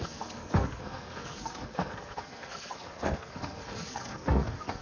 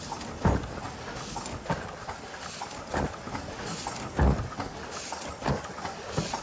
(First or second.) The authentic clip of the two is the second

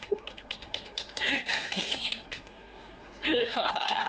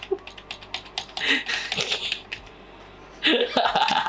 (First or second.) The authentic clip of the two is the second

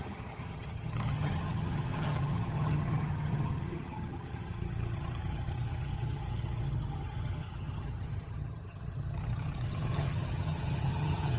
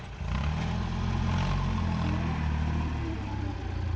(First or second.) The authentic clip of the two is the second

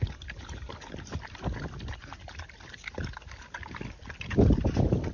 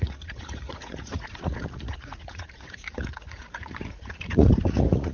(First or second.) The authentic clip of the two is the first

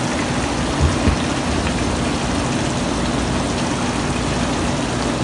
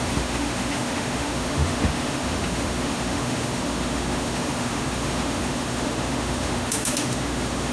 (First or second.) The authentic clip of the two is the first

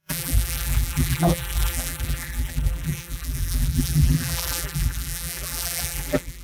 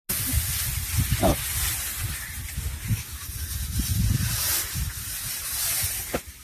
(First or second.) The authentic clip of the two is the second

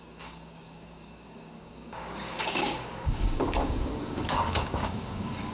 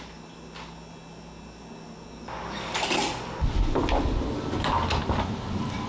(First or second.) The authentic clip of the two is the second